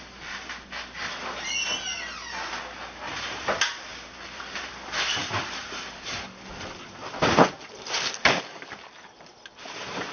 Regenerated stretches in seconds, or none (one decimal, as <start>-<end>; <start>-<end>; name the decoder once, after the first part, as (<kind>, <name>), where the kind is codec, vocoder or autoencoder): 3.9-8.1 (vocoder, BigVGAN v2)